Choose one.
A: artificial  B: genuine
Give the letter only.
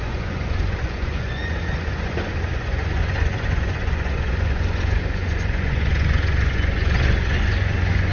A